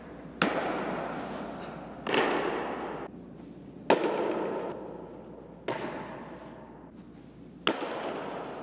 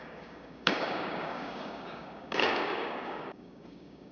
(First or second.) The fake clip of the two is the second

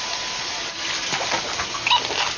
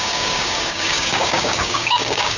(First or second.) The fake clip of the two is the second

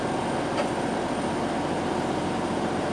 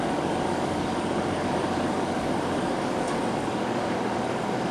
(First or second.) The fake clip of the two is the second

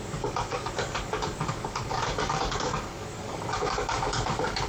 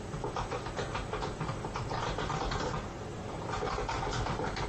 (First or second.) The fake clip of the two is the first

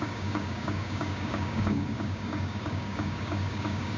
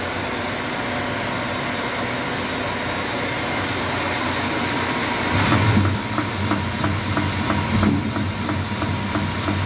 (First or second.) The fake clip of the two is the first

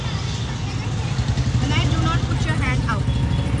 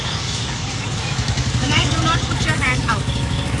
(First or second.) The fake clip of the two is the second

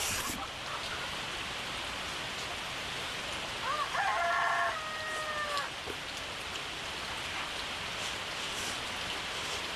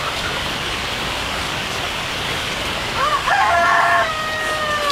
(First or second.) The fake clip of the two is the second